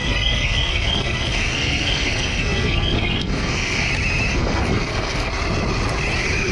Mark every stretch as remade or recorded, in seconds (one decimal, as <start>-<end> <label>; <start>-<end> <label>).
0.0-3.9 remade; 3.9-4.3 recorded; 4.3-5.3 remade; 5.3-6.5 recorded